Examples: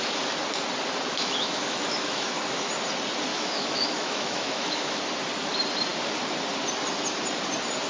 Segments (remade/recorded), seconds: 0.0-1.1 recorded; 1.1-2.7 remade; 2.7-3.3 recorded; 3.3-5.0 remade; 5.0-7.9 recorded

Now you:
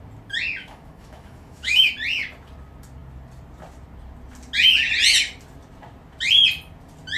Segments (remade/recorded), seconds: 0.0-0.6 recorded; 0.6-1.9 remade; 1.9-7.2 recorded

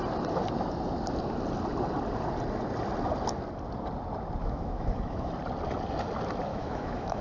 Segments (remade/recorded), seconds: 0.0-4.4 recorded; 4.4-5.3 remade; 5.3-6.5 recorded; 6.5-7.2 remade

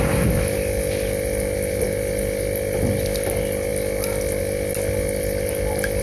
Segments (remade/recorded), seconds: 0.0-6.0 recorded

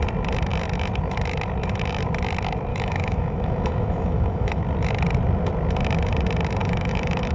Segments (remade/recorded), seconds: 0.0-2.7 recorded; 2.7-4.6 remade; 4.6-6.6 recorded; 6.6-7.3 remade

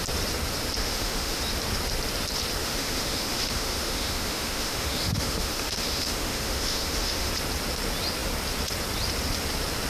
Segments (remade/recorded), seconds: 0.0-0.8 recorded; 0.8-1.4 remade; 1.4-2.6 recorded; 2.6-7.3 remade; 7.3-9.9 recorded